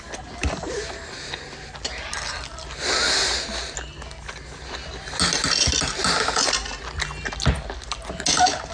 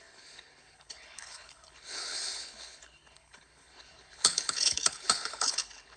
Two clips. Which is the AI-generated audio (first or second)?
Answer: second